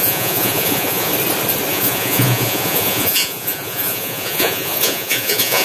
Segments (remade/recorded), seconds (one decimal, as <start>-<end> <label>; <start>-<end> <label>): 0.0-1.1 remade; 1.1-1.7 recorded; 1.7-5.6 remade